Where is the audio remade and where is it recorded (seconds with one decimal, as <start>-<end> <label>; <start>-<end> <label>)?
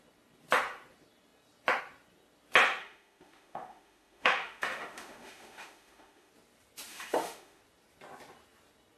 0.0-2.8 recorded; 2.8-6.3 remade; 6.3-6.9 recorded; 6.9-7.6 remade; 7.6-9.0 recorded